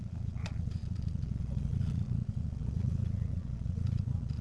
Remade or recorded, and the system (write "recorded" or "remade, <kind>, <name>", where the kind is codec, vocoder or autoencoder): remade, vocoder, Vocos